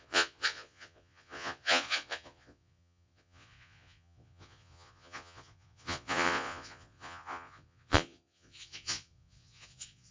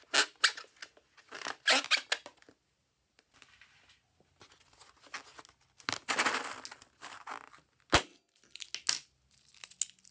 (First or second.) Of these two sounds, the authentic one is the second